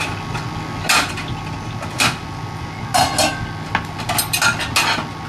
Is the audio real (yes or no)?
yes